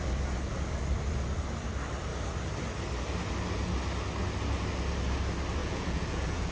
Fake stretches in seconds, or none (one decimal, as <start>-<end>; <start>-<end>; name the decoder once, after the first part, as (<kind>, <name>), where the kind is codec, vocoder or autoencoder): 5.6-6.5 (vocoder, Vocos)